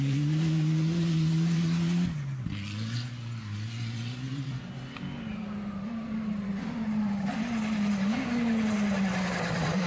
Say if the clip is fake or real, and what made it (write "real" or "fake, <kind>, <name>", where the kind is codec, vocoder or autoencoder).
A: real